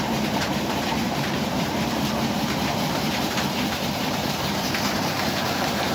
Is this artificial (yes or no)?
yes